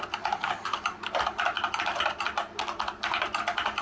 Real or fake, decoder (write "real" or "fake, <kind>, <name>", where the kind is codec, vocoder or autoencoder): real